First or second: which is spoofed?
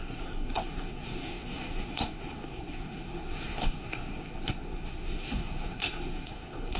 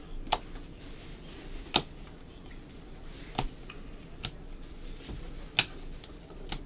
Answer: first